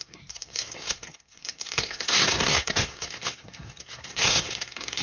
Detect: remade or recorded remade